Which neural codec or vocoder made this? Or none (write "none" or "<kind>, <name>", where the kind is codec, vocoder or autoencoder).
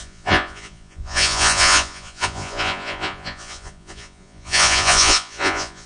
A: vocoder, Vocos